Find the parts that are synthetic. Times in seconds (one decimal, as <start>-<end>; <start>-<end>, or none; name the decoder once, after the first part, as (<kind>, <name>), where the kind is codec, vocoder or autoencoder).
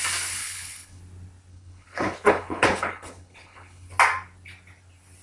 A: 0.4-1.0 (codec, HILCodec); 1.5-3.9